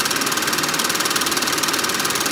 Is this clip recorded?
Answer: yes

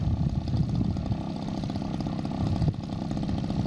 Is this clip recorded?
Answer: yes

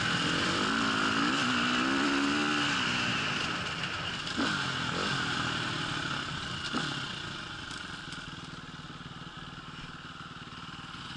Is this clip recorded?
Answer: yes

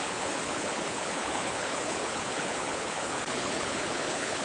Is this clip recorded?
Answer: no